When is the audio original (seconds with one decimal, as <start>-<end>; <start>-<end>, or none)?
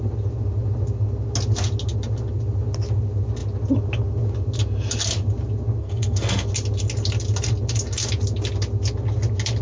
0.0-5.8; 6.5-9.6